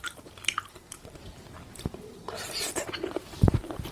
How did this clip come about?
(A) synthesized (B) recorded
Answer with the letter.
A